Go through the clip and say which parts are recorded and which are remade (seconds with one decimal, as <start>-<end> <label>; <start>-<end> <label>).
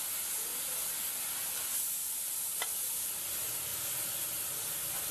0.0-5.1 recorded